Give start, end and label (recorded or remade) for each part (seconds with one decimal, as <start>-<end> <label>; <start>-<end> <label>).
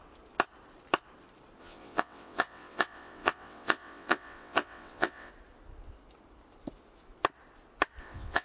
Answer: 0.0-1.6 recorded; 1.6-5.3 remade; 5.3-8.0 recorded; 8.0-8.4 remade